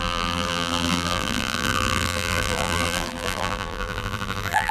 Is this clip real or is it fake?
fake